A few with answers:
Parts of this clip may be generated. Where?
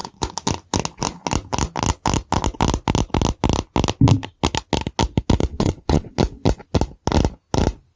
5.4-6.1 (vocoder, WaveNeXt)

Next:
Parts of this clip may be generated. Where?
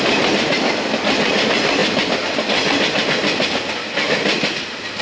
none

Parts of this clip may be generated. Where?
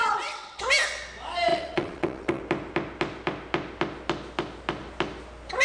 0.0-0.6 (vocoder, WaveNeXt); 1.5-2.4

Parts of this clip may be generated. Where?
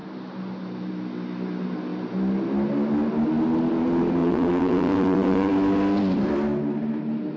4.2-5.5 (vocoder, WaveNeXt)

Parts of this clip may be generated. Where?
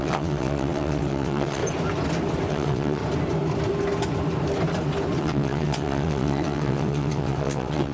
0.0-1.6 (vocoder, WaveNeXt); 2.5-3.0; 5.2-7.9